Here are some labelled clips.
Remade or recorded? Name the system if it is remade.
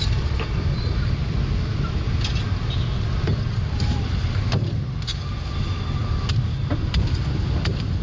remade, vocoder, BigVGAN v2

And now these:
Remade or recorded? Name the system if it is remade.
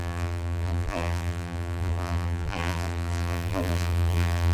remade, vocoder, BigVGAN v2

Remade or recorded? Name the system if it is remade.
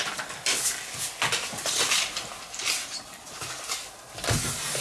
recorded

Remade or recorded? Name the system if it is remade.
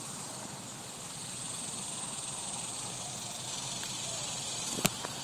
remade, vocoder, BigVGAN v2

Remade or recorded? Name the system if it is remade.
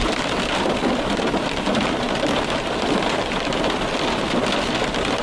remade, vocoder, BigVGAN v2